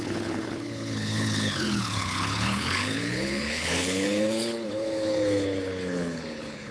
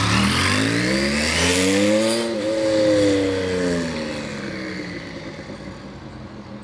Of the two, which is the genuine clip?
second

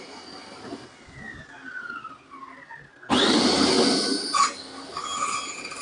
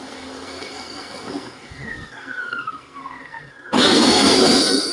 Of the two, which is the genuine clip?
first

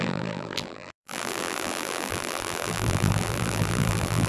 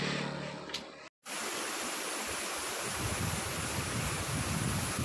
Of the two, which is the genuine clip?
second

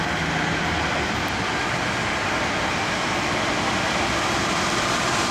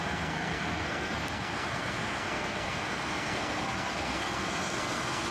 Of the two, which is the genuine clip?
first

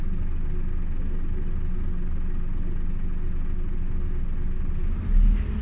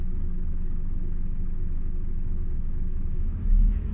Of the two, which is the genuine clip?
first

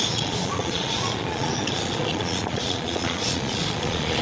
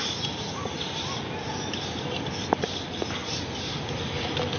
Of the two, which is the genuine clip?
second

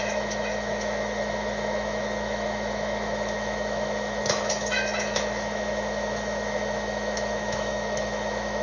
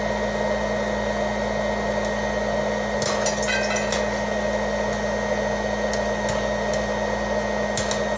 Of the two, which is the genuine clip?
second